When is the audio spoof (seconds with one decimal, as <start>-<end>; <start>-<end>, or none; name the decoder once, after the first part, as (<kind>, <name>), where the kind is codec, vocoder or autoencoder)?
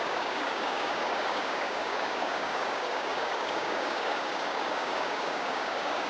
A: 0.0-6.1 (codec, DAC)